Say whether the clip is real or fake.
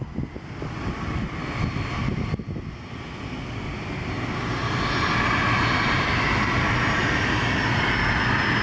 real